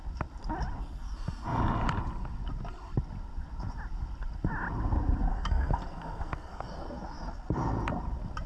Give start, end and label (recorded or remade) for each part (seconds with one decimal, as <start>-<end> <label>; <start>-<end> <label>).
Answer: 0.0-5.3 recorded; 5.3-6.7 remade; 6.7-8.5 recorded